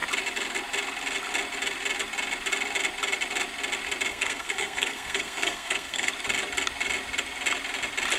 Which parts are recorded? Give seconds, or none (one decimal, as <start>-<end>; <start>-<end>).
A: 0.0-4.1; 6.1-8.2